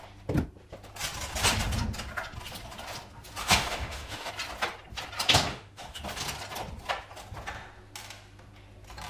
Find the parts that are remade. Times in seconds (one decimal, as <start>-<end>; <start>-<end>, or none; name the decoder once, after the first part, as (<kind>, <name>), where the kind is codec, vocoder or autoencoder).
3.4-4.3 (autoencoder, DAC-VAE); 5.5-6.0